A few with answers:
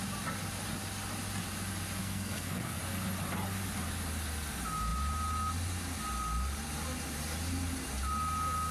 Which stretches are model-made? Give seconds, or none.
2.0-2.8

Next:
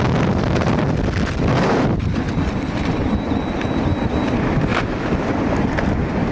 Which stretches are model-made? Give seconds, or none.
0.0-6.3

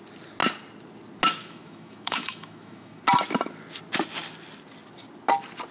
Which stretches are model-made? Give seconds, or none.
1.4-3.0

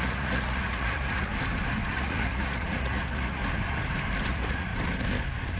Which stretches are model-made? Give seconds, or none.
0.0-1.3; 1.9-3.4; 4.3-4.7

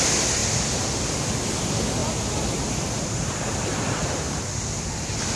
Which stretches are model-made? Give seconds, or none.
2.0-4.4

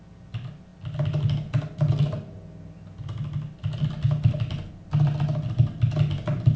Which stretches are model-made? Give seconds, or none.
none

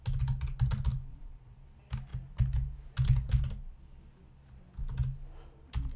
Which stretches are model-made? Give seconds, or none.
1.1-1.6